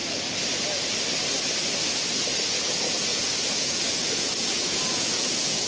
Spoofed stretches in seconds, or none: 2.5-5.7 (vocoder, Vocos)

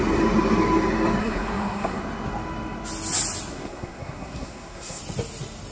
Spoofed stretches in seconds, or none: 1.2-2.0 (codec, SNAC); 3.5-5.0

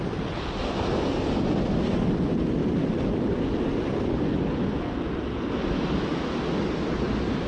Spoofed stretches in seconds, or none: 2.6-4.0 (vocoder, BigVGAN v2)

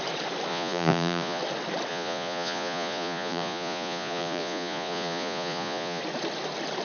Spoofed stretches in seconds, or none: 0.5-1.4 (vocoder, Vocos); 1.9-6.0

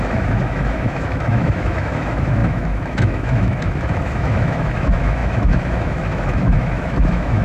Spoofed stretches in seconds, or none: 0.0-7.4 (autoencoder, DAC-VAE)

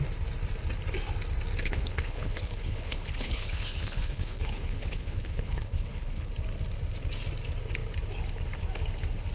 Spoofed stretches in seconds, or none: 1.6-6.3 (codec, HILCodec)